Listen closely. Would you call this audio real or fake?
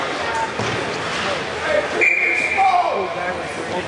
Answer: real